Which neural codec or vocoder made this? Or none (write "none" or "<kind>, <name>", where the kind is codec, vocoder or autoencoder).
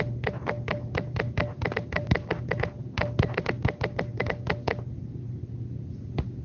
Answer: none